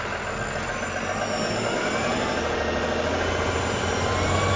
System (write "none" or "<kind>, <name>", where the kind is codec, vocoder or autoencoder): none